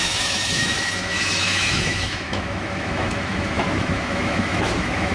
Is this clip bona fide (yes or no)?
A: no